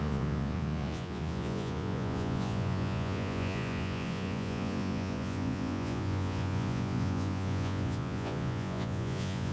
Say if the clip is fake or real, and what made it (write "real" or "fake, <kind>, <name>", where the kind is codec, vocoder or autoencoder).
fake, vocoder, Vocos